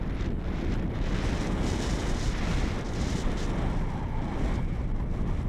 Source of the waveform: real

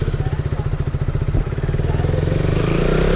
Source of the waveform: real